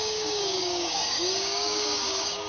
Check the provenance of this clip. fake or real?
fake